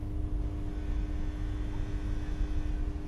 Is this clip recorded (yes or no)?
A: yes